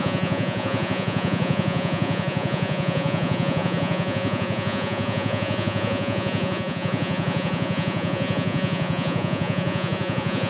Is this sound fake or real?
fake